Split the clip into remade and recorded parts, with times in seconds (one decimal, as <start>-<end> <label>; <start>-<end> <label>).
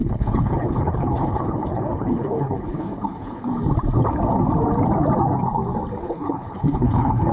0.0-3.5 remade; 3.5-6.0 recorded; 6.0-7.3 remade